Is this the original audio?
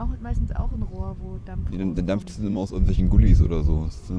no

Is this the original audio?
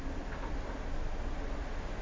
yes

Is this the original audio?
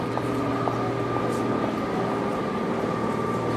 yes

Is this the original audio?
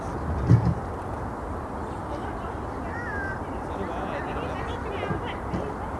yes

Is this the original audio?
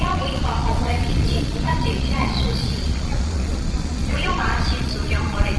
no